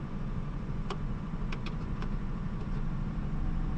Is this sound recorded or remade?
remade